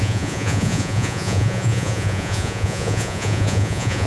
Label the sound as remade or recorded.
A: remade